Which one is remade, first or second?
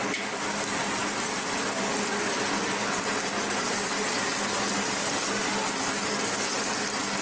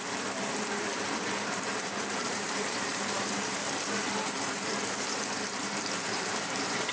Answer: second